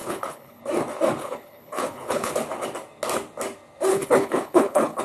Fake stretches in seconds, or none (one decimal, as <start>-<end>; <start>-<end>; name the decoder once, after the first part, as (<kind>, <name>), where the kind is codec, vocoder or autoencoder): 0.0-0.6 (codec, HILCodec); 1.2-2.3; 3.9-5.0